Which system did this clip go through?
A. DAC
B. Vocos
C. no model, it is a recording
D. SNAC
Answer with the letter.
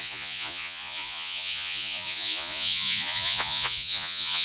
B